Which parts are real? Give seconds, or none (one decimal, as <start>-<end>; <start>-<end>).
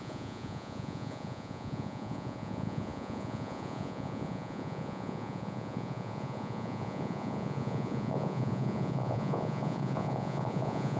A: none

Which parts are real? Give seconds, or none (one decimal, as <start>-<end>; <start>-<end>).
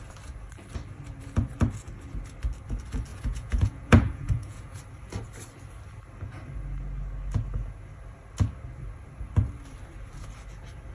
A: 0.0-3.1; 4.8-10.9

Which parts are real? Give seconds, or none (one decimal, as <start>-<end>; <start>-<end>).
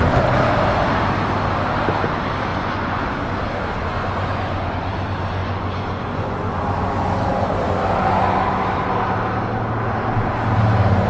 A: 0.0-2.5; 3.0-3.8; 4.9-5.4; 6.6-11.1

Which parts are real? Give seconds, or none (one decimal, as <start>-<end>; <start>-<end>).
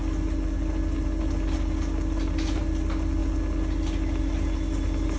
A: 0.0-5.2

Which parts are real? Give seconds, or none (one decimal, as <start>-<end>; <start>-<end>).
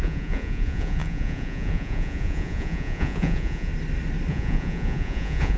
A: 3.7-4.3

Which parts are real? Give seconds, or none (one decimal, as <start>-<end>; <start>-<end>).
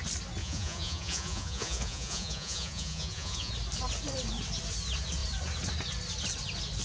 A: 0.0-0.4; 3.5-6.8